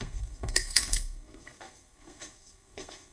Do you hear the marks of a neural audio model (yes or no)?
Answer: yes